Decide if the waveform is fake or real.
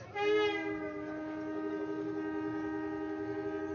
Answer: real